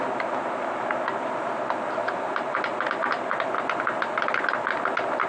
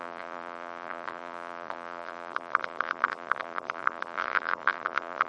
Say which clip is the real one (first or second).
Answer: first